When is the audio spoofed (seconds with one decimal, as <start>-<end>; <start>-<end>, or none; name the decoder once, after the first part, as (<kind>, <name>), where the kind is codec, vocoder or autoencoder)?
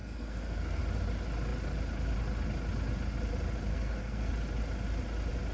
0.0-0.8 (codec, SNAC); 3.7-4.3